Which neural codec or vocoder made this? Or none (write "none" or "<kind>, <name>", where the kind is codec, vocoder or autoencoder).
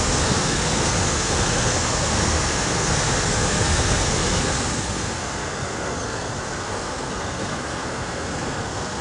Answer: codec, SNAC